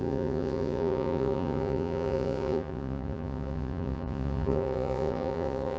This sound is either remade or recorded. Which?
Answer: remade